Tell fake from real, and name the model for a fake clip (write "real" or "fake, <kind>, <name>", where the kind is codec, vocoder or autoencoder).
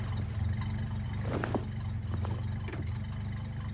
real